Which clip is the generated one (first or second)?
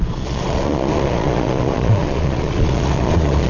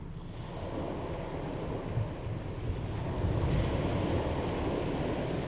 first